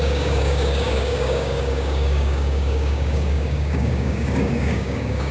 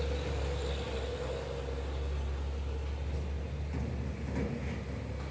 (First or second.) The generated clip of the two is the first